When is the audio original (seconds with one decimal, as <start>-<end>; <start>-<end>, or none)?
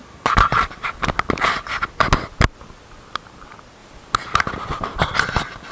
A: 0.0-5.7